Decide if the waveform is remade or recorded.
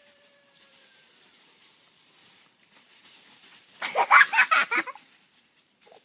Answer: remade